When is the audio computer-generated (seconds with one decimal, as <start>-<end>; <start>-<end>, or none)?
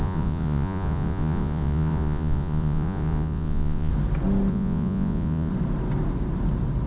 0.0-3.9; 4.5-5.5